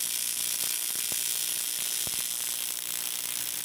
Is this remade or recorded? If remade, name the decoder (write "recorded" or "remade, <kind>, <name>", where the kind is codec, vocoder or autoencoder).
recorded